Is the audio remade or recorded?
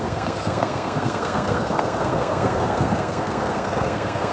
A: remade